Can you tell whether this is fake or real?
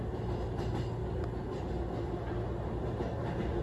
real